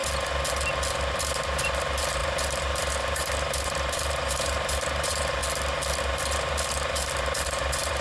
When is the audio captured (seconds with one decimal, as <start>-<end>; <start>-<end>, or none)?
0.0-1.1; 5.4-6.0